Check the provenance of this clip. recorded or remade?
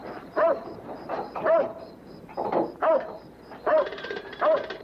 remade